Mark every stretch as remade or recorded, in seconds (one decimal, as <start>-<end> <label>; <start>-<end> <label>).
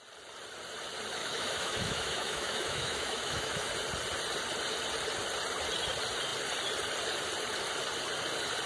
0.0-1.2 recorded; 1.2-3.7 remade; 3.7-8.7 recorded